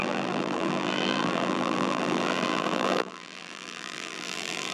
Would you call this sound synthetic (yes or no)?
yes